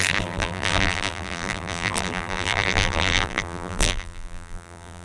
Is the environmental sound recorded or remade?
remade